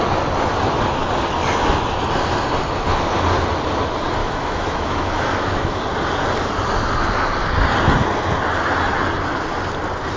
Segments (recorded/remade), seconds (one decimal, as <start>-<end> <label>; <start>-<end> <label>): 0.0-4.2 recorded; 4.2-5.8 remade; 5.8-10.2 recorded